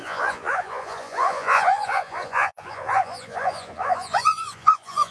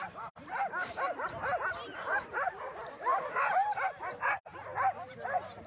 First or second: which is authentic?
second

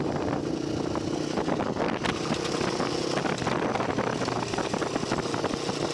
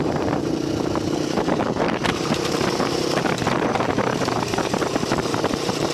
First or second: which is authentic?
first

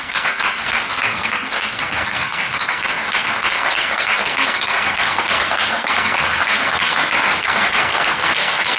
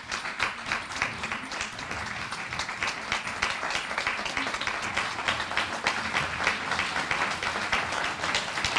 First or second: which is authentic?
second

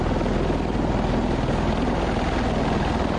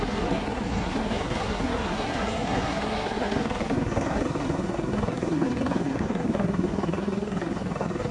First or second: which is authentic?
first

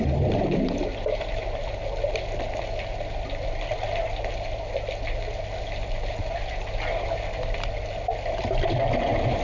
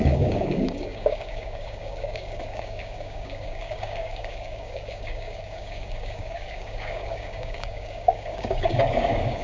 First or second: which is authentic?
first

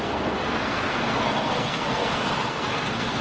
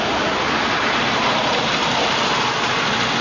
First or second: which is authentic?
second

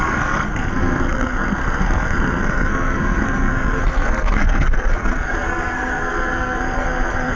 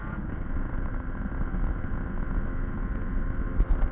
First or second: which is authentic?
second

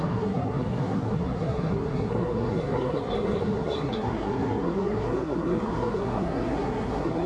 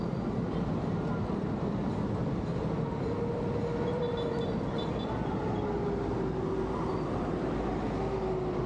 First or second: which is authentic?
second